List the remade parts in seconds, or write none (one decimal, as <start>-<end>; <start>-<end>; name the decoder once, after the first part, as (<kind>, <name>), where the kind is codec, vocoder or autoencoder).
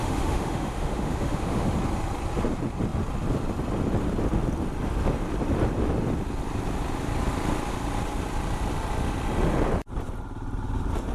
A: 0.0-1.7 (autoencoder, DAC-VAE)